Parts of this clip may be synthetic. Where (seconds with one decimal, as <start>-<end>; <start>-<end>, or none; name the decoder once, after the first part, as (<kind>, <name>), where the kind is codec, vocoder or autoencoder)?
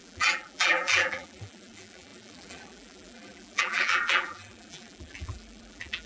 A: 0.0-6.1 (vocoder, BigVGAN v2)